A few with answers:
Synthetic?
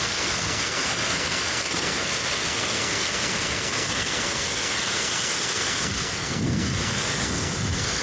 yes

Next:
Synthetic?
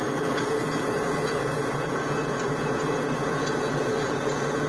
yes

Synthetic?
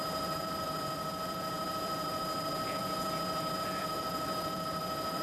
yes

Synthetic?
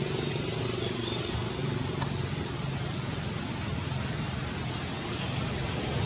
no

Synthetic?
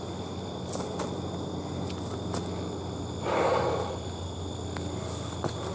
no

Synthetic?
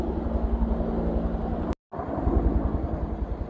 no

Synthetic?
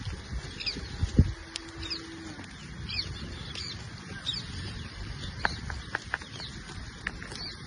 no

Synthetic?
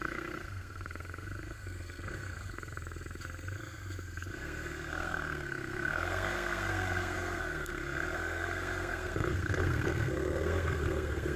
yes